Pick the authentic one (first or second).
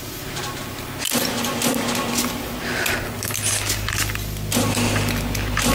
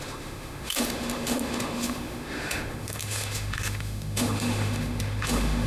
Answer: first